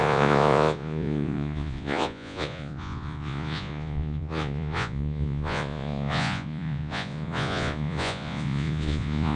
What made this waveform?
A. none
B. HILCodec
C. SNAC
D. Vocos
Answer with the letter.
D